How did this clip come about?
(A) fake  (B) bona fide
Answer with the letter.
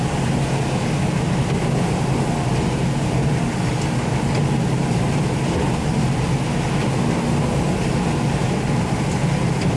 B